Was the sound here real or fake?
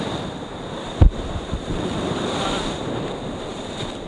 fake